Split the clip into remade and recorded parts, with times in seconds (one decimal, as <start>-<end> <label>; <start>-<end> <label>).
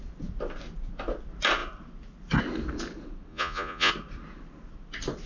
0.0-3.3 recorded; 3.3-3.9 remade; 3.9-5.3 recorded